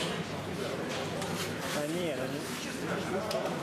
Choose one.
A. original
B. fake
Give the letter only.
B